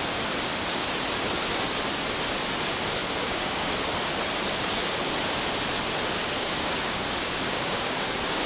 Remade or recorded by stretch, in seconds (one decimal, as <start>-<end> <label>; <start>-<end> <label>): 0.0-3.0 recorded; 3.0-3.7 remade; 3.7-6.2 recorded; 6.2-8.5 remade